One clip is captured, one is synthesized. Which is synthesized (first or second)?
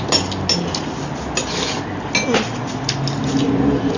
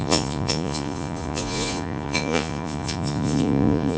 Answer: second